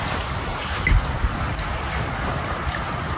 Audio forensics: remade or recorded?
recorded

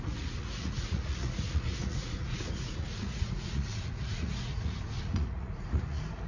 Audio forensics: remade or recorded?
remade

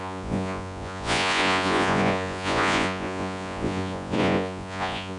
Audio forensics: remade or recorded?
remade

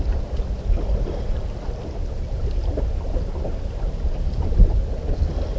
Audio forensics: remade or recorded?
recorded